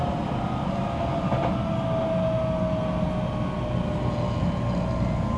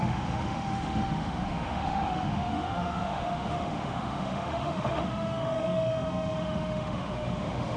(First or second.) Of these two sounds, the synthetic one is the second